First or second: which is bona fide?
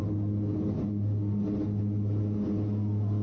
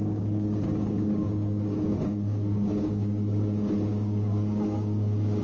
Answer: first